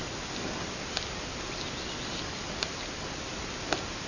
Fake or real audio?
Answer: real